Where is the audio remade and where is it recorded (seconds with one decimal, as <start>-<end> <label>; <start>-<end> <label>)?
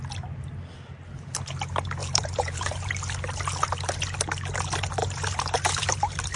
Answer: 0.0-2.0 recorded; 2.0-2.9 remade; 2.9-5.0 recorded; 5.0-6.4 remade